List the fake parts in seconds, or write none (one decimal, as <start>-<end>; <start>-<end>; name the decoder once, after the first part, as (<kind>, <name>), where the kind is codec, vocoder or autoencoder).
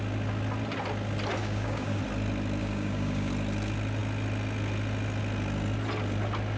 1.4-2.0 (codec, DAC); 2.6-3.3